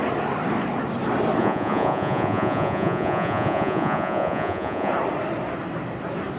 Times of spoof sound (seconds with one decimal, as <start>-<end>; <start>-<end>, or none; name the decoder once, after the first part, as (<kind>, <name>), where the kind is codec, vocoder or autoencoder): 1.4-4.9 (vocoder, Vocos)

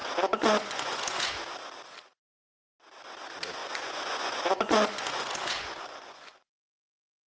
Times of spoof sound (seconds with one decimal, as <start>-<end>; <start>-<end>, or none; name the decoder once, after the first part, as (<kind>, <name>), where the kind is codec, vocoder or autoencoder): 0.0-1.3 (vocoder, Vocos); 3.6-6.6

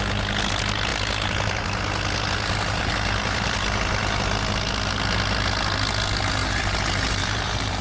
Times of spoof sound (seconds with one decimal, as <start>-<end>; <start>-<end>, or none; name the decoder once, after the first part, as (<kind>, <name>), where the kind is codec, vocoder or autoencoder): 6.4-7.8 (vocoder, BigVGAN v2)

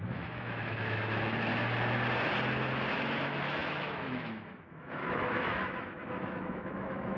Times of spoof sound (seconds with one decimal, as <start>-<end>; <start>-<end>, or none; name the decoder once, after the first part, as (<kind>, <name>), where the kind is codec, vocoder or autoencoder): 0.0-1.5 (autoencoder, DAC-VAE); 2.9-7.2